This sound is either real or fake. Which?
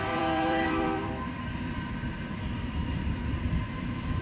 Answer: fake